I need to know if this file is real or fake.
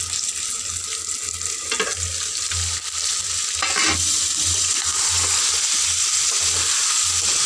real